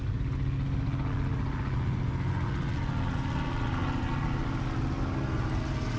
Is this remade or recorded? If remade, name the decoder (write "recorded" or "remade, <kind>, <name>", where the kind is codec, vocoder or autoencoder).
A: recorded